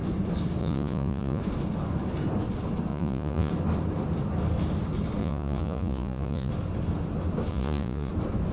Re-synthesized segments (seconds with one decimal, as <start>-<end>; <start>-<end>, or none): 0.6-1.4; 2.9-3.5; 5.2-6.5; 7.5-8.1